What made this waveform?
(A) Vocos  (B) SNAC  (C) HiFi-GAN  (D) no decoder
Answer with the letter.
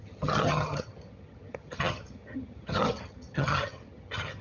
C